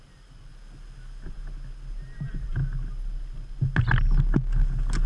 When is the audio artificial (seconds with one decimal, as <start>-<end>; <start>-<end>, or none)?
0.0-0.5; 2.2-2.6